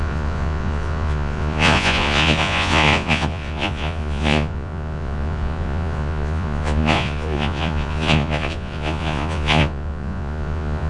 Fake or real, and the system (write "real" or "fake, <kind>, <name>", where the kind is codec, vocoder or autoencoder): fake, vocoder, Vocos